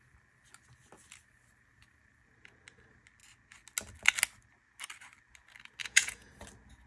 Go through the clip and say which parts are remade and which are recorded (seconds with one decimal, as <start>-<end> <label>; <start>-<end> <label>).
0.0-5.8 recorded; 5.8-6.3 remade; 6.3-6.9 recorded